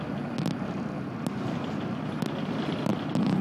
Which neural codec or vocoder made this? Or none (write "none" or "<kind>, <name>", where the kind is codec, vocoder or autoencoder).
none